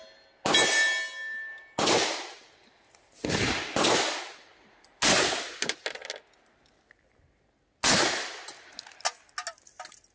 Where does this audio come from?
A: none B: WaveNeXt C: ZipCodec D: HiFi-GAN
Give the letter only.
A